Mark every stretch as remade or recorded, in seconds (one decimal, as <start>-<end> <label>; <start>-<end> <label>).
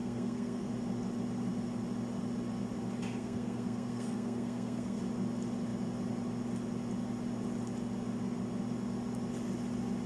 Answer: 0.0-0.7 remade; 0.7-3.2 recorded; 3.2-5.0 remade; 5.0-10.1 recorded